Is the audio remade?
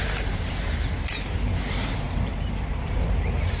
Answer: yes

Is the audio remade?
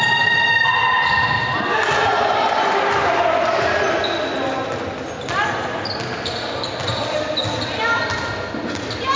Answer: no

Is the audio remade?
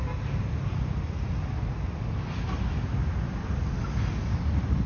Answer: no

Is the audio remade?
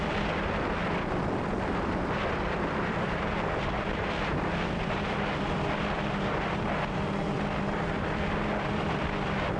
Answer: yes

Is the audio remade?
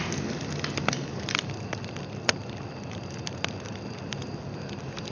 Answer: no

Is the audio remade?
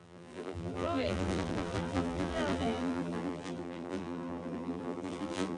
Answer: yes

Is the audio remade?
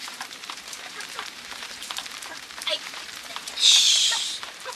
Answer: yes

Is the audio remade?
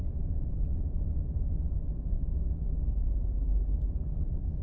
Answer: yes